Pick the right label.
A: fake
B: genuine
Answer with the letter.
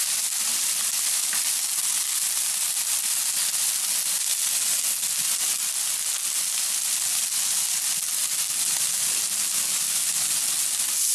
B